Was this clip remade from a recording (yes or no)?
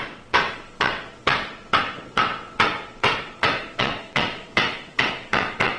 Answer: yes